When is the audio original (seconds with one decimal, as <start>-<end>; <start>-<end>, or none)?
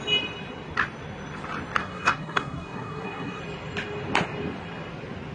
0.0-1.8; 3.4-5.3